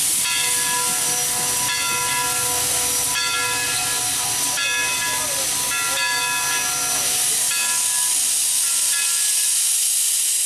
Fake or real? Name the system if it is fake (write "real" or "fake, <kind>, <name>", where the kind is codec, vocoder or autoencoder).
real